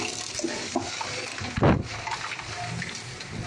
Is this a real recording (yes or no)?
yes